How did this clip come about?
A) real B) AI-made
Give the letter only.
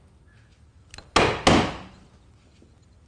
A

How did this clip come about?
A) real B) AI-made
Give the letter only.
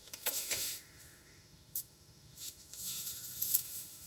B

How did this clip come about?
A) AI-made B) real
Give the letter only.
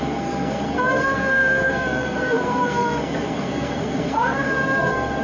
A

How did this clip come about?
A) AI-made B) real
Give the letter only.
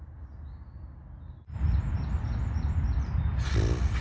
B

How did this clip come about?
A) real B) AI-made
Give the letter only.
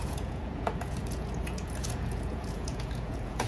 B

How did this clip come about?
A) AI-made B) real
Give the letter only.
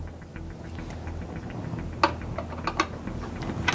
B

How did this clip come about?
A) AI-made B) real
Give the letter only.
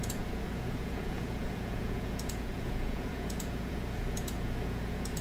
A